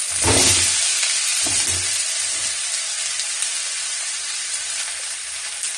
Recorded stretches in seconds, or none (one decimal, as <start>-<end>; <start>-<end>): 0.0-5.8